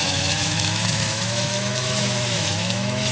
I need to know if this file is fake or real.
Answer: fake